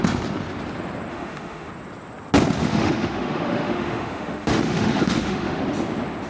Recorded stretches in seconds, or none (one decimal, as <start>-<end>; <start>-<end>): 0.0-1.1; 1.7-2.6; 5.6-6.3